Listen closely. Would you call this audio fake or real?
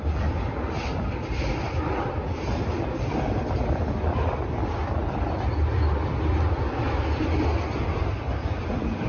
real